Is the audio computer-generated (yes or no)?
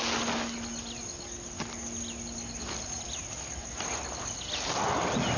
no